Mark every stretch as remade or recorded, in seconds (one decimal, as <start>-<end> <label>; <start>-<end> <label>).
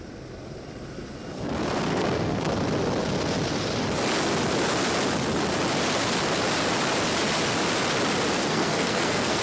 0.0-1.9 recorded; 1.9-2.5 remade; 2.5-8.4 recorded; 8.4-9.4 remade